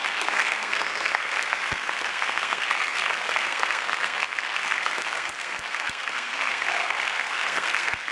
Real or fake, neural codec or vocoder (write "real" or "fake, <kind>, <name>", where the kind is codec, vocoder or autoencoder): fake, codec, SNAC